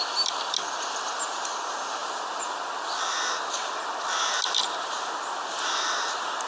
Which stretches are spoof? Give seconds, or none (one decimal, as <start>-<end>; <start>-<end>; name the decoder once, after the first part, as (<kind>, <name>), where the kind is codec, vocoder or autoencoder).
2.0-2.6 (vocoder, BigVGAN v2)